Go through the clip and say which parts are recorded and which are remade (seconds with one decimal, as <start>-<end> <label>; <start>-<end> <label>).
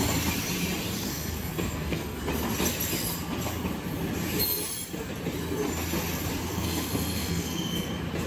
0.0-1.1 recorded; 1.1-2.2 remade; 2.2-6.5 recorded; 6.5-7.9 remade; 7.9-8.3 recorded